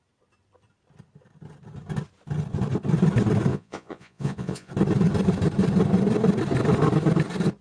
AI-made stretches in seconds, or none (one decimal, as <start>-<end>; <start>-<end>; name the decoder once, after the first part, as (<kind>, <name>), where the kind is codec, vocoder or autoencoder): 3.5-4.7 (vocoder, Vocos)